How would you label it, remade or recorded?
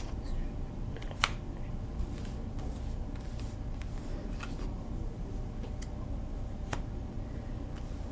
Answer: remade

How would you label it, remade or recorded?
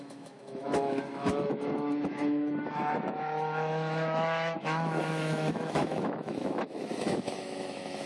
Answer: remade